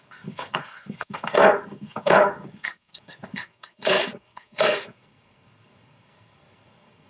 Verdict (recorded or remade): remade